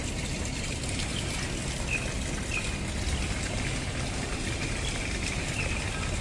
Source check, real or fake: real